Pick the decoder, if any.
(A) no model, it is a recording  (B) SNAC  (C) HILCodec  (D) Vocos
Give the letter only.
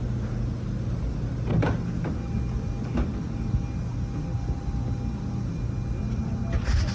A